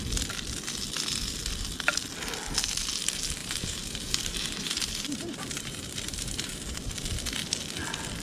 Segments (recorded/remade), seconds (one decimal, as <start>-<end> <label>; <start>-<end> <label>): 0.0-3.4 recorded; 3.4-6.9 remade; 6.9-8.2 recorded